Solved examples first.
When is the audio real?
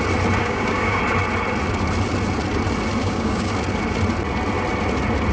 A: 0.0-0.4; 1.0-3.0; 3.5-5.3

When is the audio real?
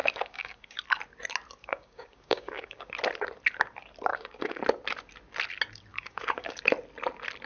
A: 0.8-1.6; 2.9-4.1; 4.6-5.9; 6.6-7.5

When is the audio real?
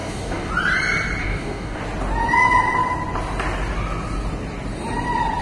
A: 0.5-1.2; 1.8-5.4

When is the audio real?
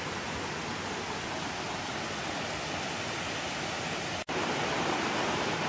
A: 0.0-5.7